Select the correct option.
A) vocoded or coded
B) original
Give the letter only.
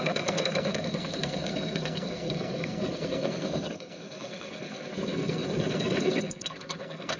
A